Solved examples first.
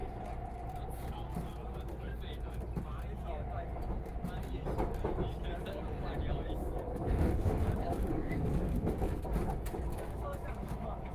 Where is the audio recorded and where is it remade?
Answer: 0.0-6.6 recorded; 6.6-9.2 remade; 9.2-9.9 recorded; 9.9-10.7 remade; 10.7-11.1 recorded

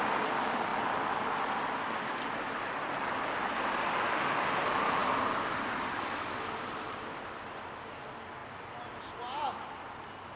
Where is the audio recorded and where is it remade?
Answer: 0.0-10.4 recorded

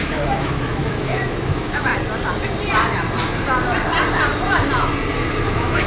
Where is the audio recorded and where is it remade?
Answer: 0.0-1.9 remade; 1.9-5.4 recorded; 5.4-5.9 remade

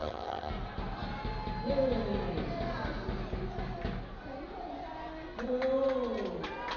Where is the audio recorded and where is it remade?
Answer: 0.0-0.5 remade; 0.5-6.8 recorded